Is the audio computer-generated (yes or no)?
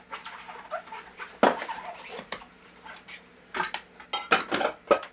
no